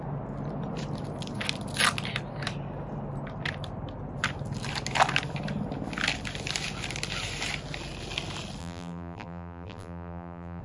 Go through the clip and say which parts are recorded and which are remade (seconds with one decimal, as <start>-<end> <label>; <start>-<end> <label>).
0.0-8.6 recorded; 8.6-10.6 remade